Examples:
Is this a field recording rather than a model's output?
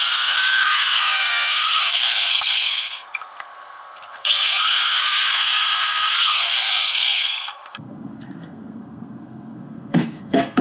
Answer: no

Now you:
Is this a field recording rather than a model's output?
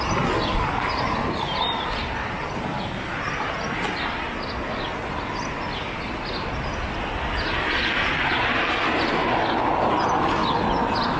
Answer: yes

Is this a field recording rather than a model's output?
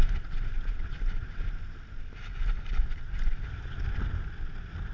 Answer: yes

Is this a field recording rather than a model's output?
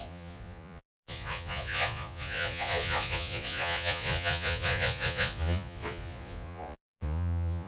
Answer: no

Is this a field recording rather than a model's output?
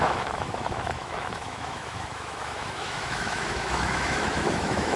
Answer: no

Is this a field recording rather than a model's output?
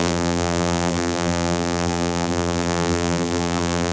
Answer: no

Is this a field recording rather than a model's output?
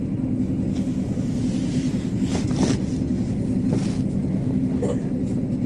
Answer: yes